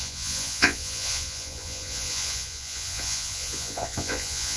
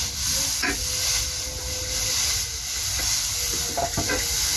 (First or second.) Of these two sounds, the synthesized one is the first